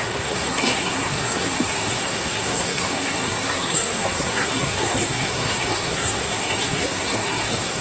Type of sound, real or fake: fake